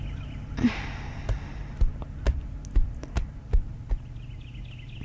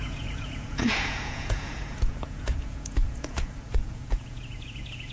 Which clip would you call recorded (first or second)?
first